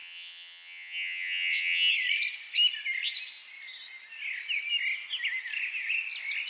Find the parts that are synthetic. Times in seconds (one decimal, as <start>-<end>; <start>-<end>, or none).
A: 0.0-1.9